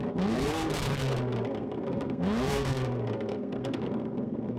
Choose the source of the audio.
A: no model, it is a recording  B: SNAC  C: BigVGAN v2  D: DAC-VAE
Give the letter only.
B